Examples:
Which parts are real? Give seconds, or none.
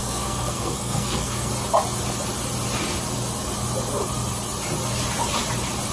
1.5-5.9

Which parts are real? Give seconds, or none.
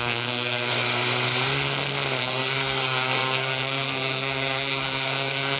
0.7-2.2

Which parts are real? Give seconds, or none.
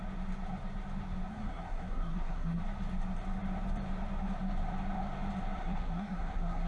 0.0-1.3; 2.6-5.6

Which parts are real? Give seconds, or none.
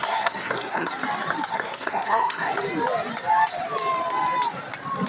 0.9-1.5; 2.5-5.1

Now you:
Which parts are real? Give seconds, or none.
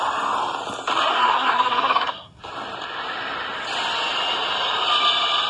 0.0-1.1; 2.4-5.5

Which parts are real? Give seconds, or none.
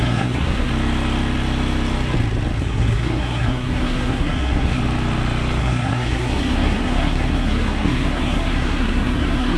0.7-2.6; 4.8-5.6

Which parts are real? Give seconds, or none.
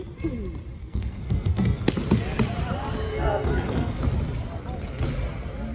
0.0-0.8; 1.9-3.1; 4.0-5.7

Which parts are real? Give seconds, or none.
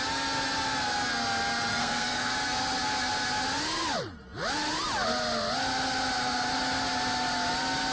0.0-1.7; 2.3-7.9